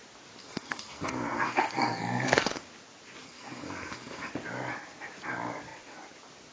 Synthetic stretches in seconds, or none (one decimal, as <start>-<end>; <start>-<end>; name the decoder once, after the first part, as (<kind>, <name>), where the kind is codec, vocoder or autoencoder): 0.4-2.6 (codec, SNAC); 3.2-4.3

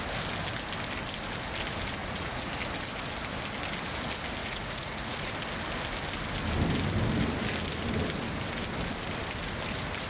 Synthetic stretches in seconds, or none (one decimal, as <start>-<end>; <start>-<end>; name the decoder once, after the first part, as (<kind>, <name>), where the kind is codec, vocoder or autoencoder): 2.0-2.5 (vocoder, Vocos); 4.4-5.3

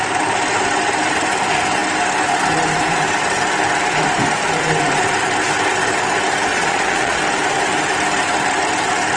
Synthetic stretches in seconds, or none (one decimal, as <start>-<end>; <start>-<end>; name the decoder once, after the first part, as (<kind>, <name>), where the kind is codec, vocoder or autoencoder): 6.5-7.2 (vocoder, Vocos)

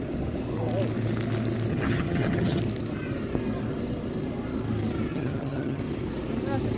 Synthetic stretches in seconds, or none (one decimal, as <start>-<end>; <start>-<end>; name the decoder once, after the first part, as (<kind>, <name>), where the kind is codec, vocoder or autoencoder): 1.7-2.6 (vocoder, HiFi-GAN); 5.1-5.8

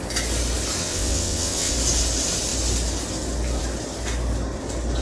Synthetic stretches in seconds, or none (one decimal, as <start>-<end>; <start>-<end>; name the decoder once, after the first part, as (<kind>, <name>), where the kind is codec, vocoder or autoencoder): 0.8-1.7 (vocoder, WaveNeXt)